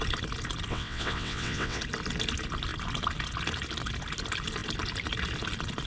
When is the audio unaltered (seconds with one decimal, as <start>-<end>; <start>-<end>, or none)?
0.0-0.7; 1.8-5.9